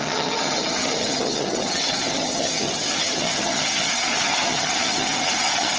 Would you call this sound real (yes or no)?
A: no